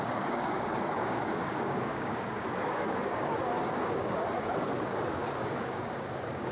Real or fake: fake